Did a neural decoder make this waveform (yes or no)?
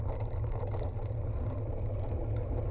no